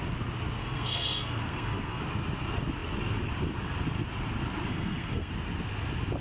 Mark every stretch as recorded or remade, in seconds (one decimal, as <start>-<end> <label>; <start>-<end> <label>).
0.0-0.6 recorded; 0.6-2.0 remade; 2.0-4.7 recorded; 4.7-5.3 remade; 5.3-6.2 recorded